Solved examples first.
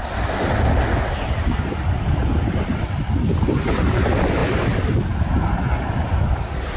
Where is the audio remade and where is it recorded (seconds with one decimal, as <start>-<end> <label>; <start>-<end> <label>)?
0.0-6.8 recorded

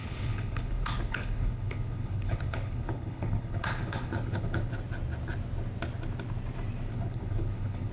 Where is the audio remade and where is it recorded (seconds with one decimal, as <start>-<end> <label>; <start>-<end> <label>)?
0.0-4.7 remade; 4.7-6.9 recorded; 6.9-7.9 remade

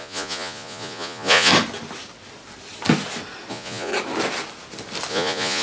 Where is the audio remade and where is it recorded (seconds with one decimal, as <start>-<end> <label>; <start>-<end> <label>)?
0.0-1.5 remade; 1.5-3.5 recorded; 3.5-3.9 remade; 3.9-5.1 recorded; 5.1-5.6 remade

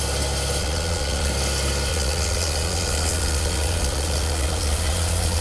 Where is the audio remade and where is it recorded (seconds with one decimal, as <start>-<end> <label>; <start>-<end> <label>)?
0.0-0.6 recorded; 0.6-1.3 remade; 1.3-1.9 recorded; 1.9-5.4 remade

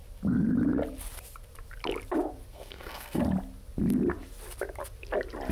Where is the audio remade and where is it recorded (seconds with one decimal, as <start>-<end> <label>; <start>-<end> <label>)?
0.0-2.5 recorded; 2.5-3.2 remade; 3.2-5.5 recorded